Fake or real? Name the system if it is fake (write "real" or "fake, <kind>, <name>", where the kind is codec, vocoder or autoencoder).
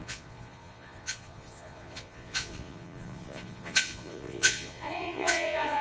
fake, vocoder, Vocos